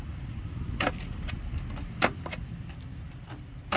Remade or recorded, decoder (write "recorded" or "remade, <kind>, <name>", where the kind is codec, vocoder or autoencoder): recorded